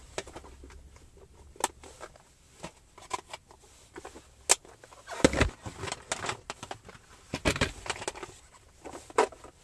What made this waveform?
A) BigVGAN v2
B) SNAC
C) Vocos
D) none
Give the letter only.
D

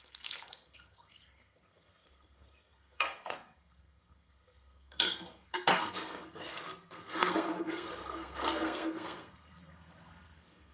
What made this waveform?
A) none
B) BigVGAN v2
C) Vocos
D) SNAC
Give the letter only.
D